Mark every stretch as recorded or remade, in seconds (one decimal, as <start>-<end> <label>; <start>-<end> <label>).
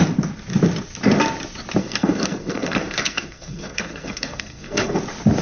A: 0.0-1.8 recorded; 1.8-5.0 remade; 5.0-5.4 recorded